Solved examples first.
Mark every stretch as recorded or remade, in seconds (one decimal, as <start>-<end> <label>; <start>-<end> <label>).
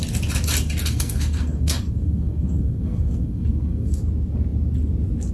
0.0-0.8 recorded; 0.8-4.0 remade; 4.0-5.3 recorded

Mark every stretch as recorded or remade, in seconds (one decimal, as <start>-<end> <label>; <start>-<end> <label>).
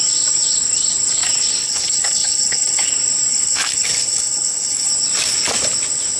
0.0-1.6 recorded; 1.6-2.9 remade; 2.9-3.3 recorded; 3.3-4.9 remade; 4.9-6.2 recorded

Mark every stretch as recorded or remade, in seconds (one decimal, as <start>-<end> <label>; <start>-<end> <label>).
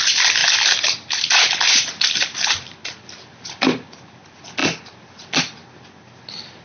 0.0-6.6 recorded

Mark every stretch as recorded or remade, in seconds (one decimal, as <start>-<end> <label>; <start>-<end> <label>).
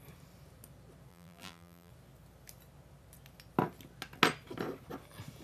0.0-1.1 recorded; 1.1-1.9 remade; 1.9-5.4 recorded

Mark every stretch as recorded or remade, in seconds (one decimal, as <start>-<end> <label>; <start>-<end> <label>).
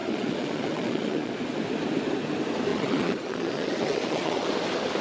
0.0-1.3 remade; 1.3-2.7 recorded; 2.7-4.5 remade; 4.5-5.0 recorded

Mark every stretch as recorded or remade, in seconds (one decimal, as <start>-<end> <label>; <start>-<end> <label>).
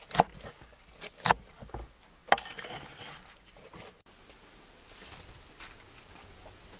0.0-6.8 recorded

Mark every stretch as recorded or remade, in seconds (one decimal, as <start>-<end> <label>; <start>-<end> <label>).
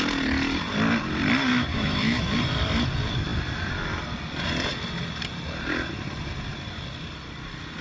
0.0-1.7 recorded; 1.7-2.3 remade; 2.3-7.8 recorded